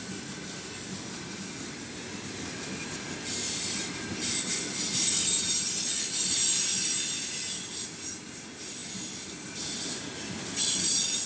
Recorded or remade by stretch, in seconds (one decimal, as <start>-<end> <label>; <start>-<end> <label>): 0.0-11.3 recorded